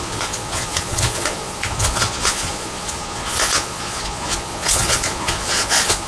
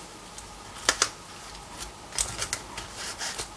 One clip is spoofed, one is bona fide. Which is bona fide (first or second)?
second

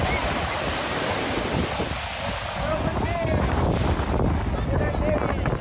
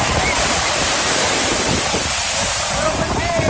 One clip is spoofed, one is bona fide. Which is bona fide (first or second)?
first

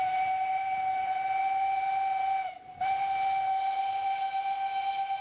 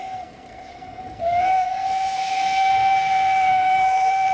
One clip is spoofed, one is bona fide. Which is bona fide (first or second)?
first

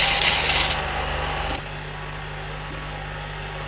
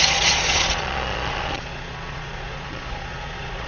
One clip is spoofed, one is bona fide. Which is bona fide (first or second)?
first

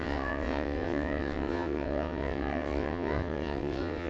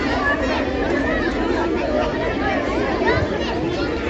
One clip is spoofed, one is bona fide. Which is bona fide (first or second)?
second